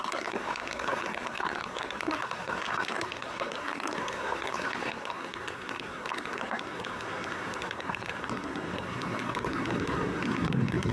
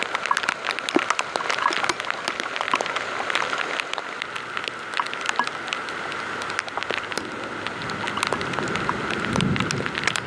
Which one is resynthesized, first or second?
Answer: first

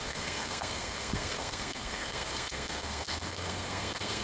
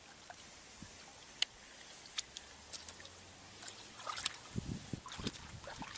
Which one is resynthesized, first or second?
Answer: first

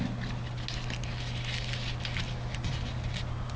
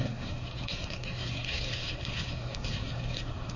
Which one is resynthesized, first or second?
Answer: second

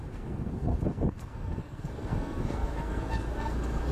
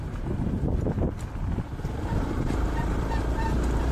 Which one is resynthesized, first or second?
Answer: first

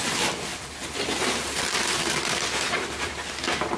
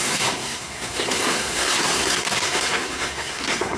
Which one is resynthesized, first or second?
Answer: second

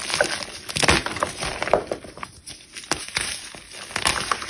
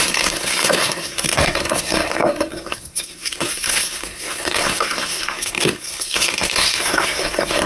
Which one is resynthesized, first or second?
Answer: second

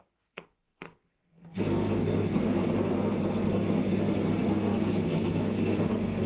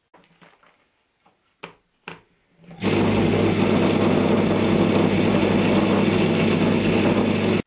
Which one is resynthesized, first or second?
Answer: first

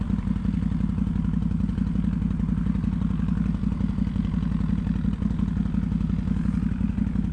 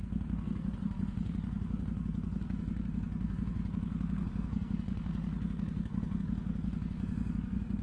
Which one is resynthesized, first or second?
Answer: second